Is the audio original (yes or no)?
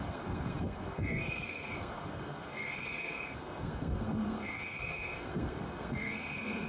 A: no